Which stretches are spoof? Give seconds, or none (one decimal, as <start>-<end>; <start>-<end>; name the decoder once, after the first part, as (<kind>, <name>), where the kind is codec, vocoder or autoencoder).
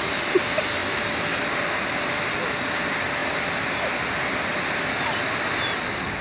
none